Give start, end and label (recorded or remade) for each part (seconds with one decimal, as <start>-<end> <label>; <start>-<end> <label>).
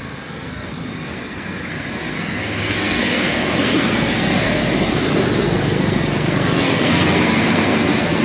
0.0-4.6 remade; 4.6-5.4 recorded; 5.4-8.2 remade